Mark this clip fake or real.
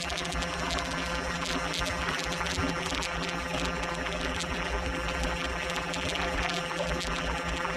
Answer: fake